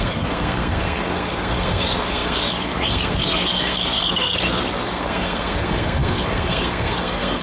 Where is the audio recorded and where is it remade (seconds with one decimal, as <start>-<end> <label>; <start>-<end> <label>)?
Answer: 0.0-7.4 remade